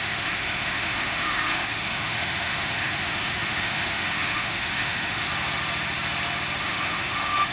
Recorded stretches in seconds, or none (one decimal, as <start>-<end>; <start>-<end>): 5.3-6.6